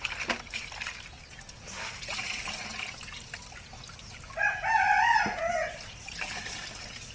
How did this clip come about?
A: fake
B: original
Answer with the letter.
B